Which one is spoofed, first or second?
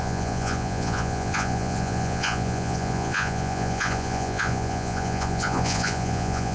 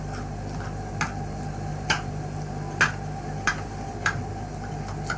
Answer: first